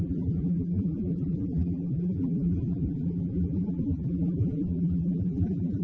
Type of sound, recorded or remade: remade